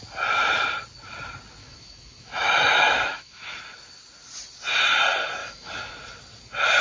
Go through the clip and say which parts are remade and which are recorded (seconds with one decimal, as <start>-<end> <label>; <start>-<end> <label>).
0.0-1.6 recorded; 1.6-3.6 remade; 3.6-5.4 recorded; 5.4-5.9 remade; 5.9-6.8 recorded